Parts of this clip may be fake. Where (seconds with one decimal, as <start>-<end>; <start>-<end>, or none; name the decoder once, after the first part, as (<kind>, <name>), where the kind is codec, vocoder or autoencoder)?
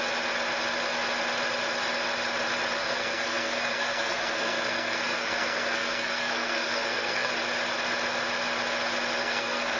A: 2.8-7.3 (codec, SNAC); 9.2-9.8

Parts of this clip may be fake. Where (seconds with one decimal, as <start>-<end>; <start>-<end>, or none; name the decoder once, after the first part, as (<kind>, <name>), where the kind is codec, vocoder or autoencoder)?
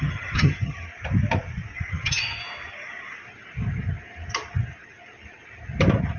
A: 0.0-0.9 (vocoder, HiFi-GAN); 1.9-2.4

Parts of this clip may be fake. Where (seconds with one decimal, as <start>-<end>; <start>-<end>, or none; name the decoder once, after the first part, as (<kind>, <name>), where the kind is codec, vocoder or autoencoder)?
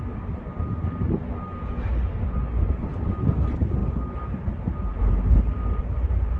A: none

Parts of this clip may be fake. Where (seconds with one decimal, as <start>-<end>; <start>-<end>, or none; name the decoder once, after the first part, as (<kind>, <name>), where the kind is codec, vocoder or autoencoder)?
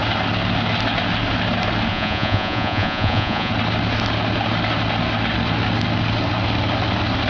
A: 1.9-3.5 (vocoder, Vocos)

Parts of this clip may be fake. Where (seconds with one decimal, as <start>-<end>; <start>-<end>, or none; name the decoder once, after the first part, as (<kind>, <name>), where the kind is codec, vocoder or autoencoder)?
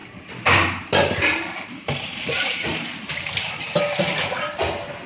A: 0.0-3.1 (vocoder, BigVGAN v2)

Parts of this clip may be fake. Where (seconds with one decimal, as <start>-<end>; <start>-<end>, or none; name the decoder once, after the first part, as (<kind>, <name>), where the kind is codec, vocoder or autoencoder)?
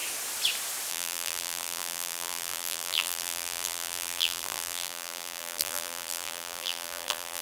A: 0.9-7.4 (vocoder, BigVGAN v2)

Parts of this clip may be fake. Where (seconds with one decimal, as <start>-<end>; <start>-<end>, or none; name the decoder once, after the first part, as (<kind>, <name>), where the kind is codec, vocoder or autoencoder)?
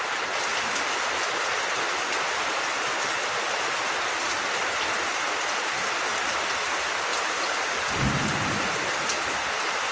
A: none